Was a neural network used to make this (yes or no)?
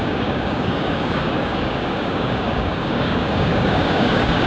yes